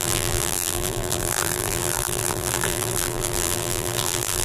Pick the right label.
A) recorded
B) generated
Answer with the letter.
B